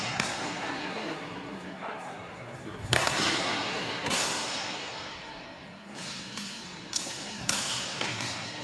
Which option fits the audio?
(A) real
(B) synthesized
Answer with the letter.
B